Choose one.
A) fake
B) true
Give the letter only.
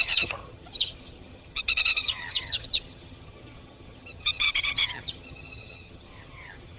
A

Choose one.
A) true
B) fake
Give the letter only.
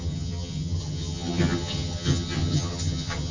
B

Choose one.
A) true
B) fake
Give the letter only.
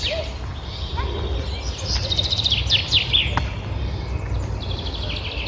A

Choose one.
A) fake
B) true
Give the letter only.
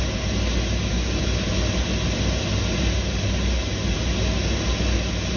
B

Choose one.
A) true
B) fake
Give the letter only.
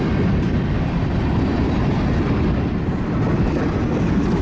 A